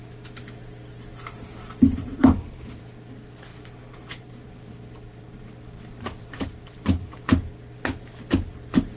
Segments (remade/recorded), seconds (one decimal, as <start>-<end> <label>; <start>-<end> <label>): 0.0-1.1 recorded; 1.1-2.8 remade; 2.8-3.5 recorded; 3.5-7.5 remade; 7.5-9.0 recorded